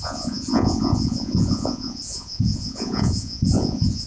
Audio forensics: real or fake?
fake